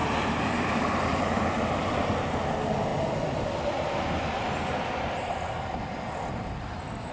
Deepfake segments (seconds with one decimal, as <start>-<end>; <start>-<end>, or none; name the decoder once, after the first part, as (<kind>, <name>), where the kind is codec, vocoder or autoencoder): 0.0-1.4 (vocoder, BigVGAN v2)